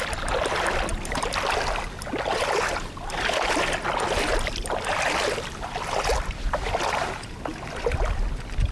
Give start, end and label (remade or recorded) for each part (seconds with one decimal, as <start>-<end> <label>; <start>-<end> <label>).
0.0-8.7 recorded